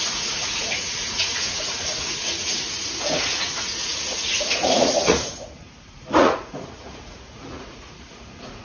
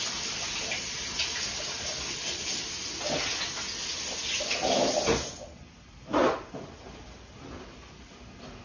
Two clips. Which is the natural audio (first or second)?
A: second